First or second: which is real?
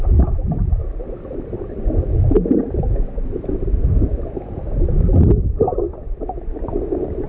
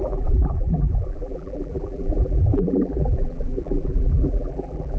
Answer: first